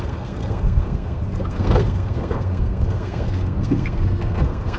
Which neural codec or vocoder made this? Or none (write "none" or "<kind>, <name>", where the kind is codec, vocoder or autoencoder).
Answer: codec, SNAC